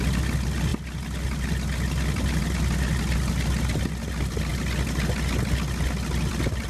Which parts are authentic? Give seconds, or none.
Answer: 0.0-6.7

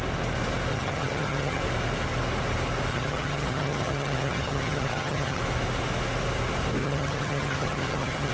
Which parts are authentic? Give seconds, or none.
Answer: 0.0-0.7; 1.6-2.9; 5.4-6.8

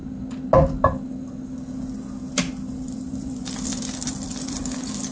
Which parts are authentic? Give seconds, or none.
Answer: 0.0-3.0

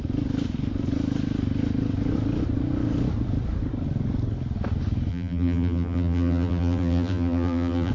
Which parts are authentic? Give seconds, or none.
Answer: 0.0-5.1

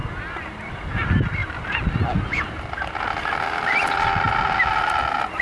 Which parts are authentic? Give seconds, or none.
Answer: 0.6-5.4

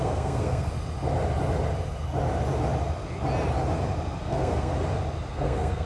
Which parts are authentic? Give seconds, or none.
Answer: 0.7-4.2; 4.7-5.3